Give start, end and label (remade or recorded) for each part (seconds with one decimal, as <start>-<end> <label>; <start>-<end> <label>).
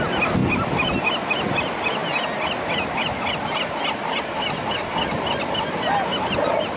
0.0-6.8 recorded